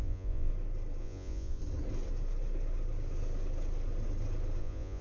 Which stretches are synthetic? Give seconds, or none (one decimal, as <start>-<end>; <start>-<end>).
0.0-0.5; 1.0-1.6; 4.6-5.0